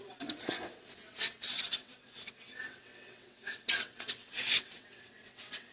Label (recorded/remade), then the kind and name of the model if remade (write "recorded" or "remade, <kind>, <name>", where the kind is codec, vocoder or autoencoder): remade, vocoder, WaveNeXt